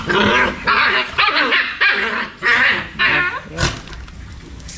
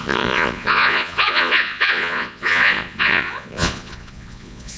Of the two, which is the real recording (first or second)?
first